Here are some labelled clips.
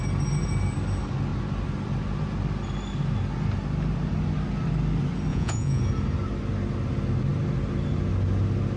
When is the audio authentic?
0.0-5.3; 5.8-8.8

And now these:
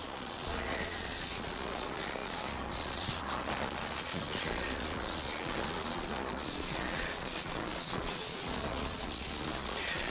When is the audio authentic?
none